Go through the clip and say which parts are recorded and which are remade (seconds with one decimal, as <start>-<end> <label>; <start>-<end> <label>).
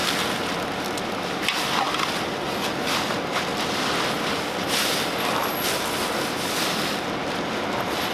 0.0-8.1 recorded